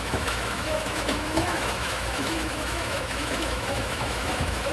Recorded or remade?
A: remade